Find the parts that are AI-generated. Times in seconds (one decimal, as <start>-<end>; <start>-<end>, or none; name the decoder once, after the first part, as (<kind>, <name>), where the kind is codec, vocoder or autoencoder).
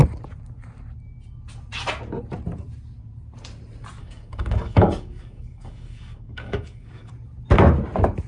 4.0-7.1 (codec, DAC)